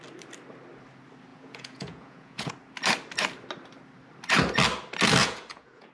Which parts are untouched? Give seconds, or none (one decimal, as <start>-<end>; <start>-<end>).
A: 0.0-1.3; 2.5-5.2